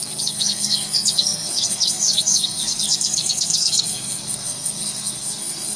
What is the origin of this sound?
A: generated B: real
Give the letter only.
A